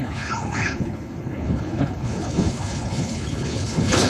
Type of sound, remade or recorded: remade